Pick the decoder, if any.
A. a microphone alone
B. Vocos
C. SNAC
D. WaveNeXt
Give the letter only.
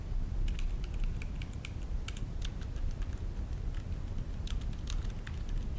A